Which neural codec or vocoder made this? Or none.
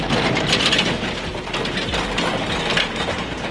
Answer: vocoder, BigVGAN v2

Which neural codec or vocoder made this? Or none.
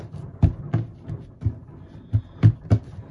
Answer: none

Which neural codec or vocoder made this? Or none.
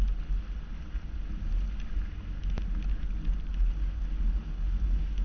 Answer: none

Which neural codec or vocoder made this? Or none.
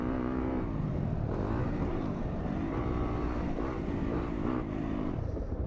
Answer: vocoder, BigVGAN v2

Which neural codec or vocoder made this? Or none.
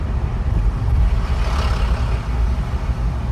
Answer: none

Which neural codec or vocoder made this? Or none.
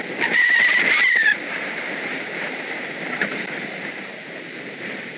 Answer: vocoder, BigVGAN v2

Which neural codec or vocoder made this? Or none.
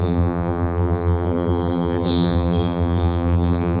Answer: vocoder, BigVGAN v2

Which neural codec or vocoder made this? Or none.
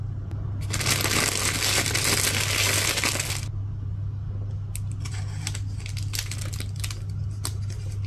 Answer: none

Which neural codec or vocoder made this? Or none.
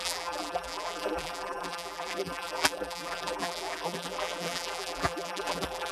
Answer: vocoder, BigVGAN v2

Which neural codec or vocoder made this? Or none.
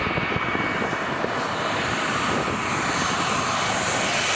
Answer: vocoder, BigVGAN v2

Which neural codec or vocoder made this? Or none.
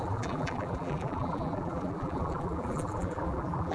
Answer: vocoder, BigVGAN v2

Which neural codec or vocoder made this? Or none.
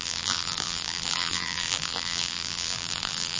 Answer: vocoder, BigVGAN v2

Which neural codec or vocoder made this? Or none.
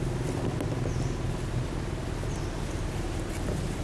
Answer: none